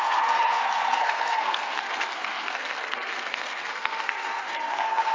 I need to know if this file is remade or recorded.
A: remade